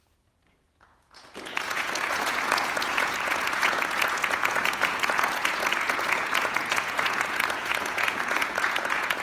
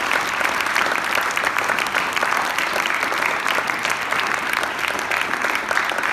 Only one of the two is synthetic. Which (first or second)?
first